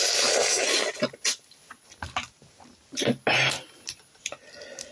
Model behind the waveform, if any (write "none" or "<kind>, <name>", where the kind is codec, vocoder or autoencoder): none